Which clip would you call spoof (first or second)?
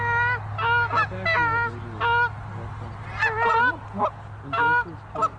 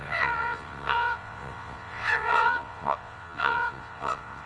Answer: second